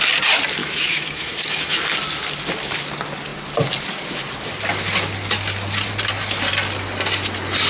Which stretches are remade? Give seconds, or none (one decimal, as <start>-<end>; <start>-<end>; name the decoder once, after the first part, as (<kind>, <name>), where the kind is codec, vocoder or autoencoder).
0.6-1.8 (autoencoder, DAC-VAE)